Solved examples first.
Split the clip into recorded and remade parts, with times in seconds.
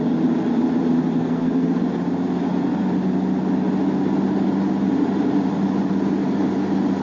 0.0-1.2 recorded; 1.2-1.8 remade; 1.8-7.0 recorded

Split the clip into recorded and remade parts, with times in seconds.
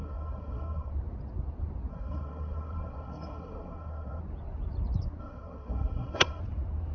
0.0-0.9 remade; 0.9-1.9 recorded; 1.9-4.2 remade; 4.2-5.2 recorded; 5.2-6.4 remade; 6.4-6.9 recorded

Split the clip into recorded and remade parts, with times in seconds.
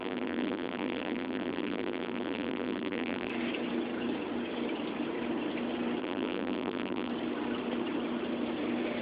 0.0-3.3 remade; 3.3-6.0 recorded; 6.0-7.1 remade; 7.1-9.0 recorded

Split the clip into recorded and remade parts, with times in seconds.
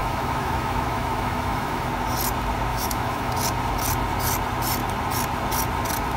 0.0-1.9 remade; 1.9-2.7 recorded; 2.7-3.3 remade; 3.3-6.2 recorded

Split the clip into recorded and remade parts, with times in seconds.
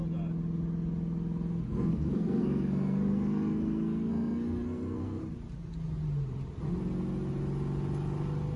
0.0-1.7 recorded; 1.7-5.2 remade; 5.2-8.6 recorded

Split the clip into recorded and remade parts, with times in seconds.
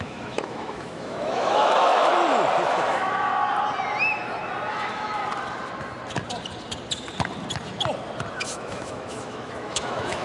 0.0-2.1 remade; 2.1-2.7 recorded; 2.7-3.3 remade; 3.3-4.7 recorded; 4.7-5.2 remade; 5.2-8.4 recorded; 8.4-10.2 remade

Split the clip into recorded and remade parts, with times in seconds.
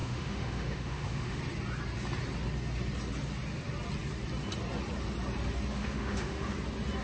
0.0-1.4 remade; 1.4-5.7 recorded; 5.7-6.5 remade; 6.5-7.0 recorded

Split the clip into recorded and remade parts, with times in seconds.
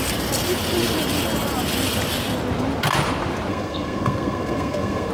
0.0-3.5 recorded; 3.5-5.1 remade